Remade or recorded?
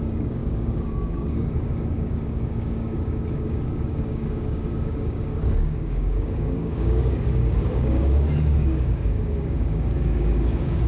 remade